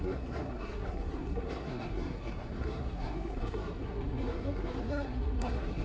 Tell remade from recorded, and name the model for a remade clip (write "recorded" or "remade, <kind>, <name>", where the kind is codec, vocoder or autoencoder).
remade, codec, SNAC